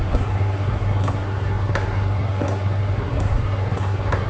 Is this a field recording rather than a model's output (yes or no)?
no